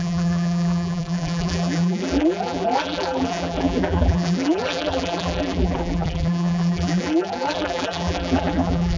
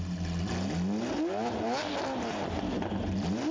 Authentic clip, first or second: second